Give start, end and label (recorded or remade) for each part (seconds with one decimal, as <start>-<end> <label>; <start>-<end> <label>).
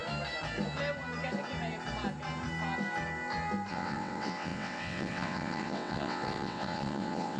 0.0-3.7 recorded; 3.7-7.4 remade